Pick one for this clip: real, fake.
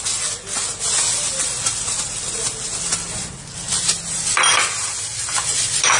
real